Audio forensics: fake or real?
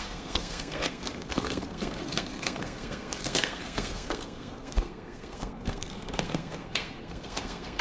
fake